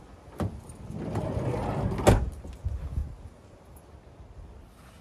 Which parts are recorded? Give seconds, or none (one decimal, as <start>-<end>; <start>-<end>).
0.0-5.0